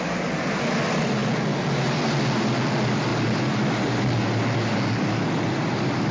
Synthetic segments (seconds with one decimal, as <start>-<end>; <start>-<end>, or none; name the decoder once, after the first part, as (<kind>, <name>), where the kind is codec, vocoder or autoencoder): none